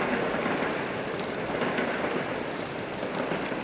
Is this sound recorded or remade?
remade